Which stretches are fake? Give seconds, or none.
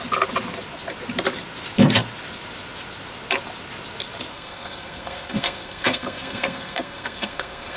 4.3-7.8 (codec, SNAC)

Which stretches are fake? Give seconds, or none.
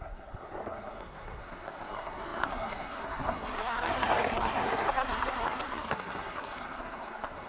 0.0-7.5 (codec, SNAC)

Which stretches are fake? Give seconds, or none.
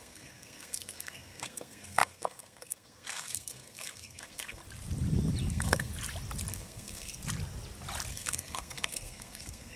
0.0-4.6 (codec, SNAC); 5.5-5.9; 6.5-7.2; 8.1-9.8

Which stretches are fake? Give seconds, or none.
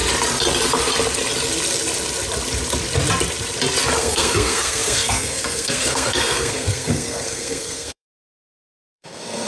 4.0-9.5 (codec, SNAC)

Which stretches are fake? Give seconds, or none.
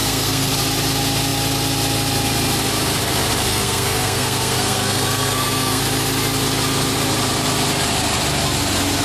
0.0-0.5 (codec, SNAC); 3.5-5.8